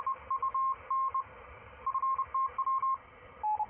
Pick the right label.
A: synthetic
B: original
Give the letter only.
B